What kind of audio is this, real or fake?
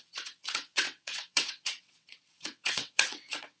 fake